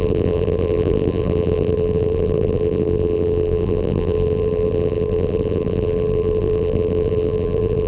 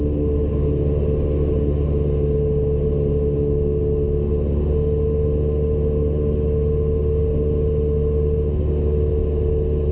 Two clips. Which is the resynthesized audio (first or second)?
first